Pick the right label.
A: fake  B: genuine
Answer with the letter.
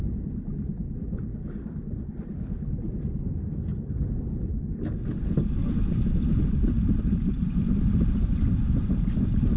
B